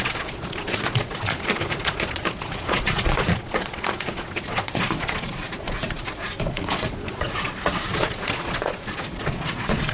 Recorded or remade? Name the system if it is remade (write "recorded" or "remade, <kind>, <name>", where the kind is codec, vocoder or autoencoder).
remade, vocoder, Vocos